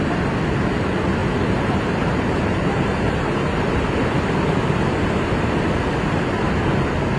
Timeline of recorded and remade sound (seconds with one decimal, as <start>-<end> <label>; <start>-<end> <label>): 0.0-1.2 recorded; 1.2-4.0 remade; 4.0-7.2 recorded